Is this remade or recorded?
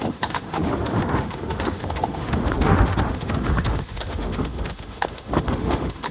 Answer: remade